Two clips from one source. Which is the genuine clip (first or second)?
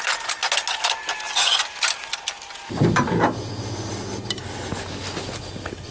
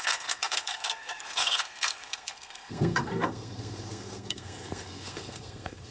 first